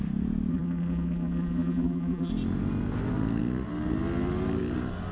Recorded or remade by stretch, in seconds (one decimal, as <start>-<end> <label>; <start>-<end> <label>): 0.0-0.5 recorded; 0.5-2.3 remade; 2.3-5.1 recorded